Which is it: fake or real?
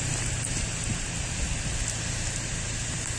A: real